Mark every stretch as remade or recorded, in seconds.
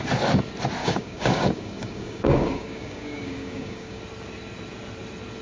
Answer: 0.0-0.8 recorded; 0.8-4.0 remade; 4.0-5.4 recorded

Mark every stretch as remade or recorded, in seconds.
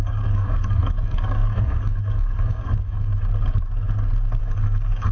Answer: 0.0-3.1 remade; 3.1-4.4 recorded; 4.4-5.1 remade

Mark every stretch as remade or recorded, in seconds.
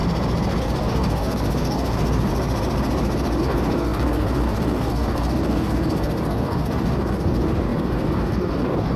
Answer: 0.0-0.6 recorded; 0.6-2.3 remade; 2.3-3.4 recorded; 3.4-9.0 remade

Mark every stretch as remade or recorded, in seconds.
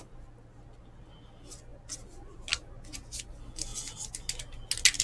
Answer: 0.0-5.0 recorded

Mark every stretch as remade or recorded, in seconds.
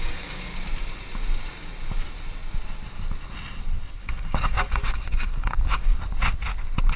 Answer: 0.0-0.5 remade; 0.5-4.0 recorded; 4.0-5.9 remade; 5.9-7.0 recorded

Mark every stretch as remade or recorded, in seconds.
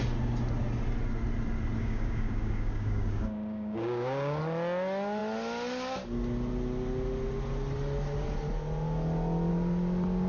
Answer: 0.0-1.8 recorded; 1.8-4.4 remade; 4.4-10.3 recorded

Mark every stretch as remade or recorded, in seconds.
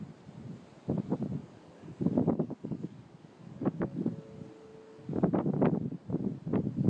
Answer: 0.0-1.4 recorded; 1.4-4.1 remade; 4.1-4.7 recorded; 4.7-5.3 remade; 5.3-6.9 recorded